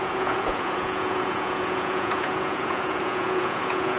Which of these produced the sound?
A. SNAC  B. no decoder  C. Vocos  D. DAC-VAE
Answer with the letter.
C